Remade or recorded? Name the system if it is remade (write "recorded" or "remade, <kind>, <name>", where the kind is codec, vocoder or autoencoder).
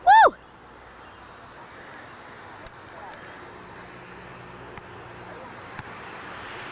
recorded